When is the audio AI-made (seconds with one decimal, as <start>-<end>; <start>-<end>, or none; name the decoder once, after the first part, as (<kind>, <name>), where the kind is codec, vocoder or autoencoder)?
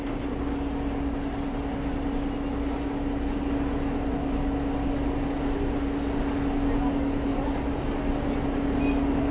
none